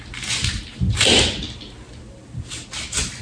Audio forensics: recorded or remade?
recorded